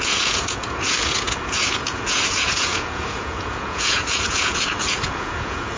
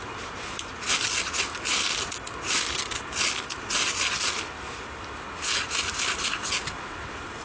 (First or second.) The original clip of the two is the second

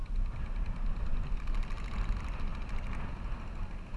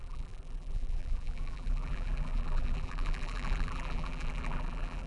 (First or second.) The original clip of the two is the first